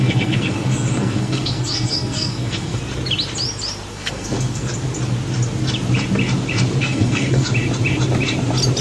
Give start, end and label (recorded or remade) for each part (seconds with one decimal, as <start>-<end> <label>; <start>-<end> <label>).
0.0-2.8 remade; 2.8-3.9 recorded; 3.9-4.7 remade; 4.7-6.8 recorded; 6.8-7.5 remade; 7.5-8.8 recorded